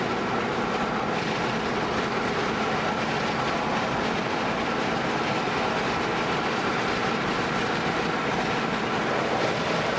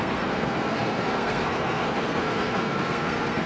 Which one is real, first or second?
first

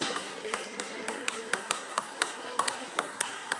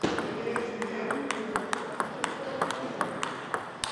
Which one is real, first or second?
second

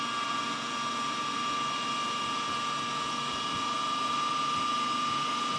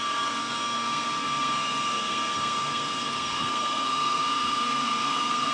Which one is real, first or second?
first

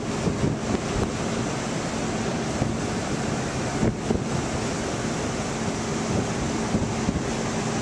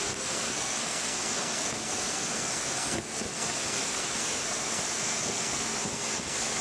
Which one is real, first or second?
first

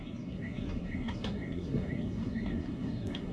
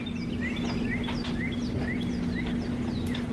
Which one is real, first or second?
second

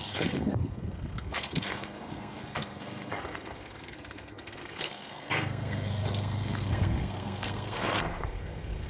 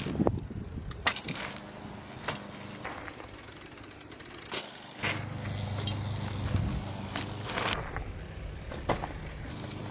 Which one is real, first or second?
second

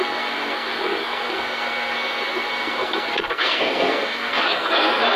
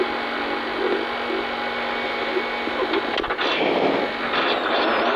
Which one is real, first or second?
second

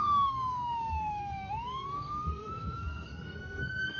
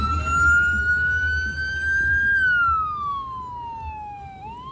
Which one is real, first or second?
second